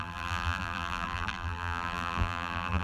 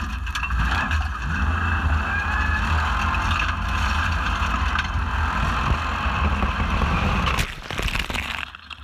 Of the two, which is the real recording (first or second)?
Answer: second